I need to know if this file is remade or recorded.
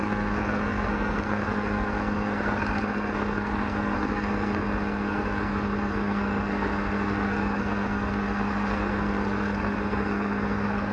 remade